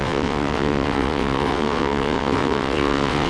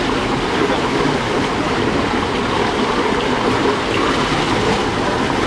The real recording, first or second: second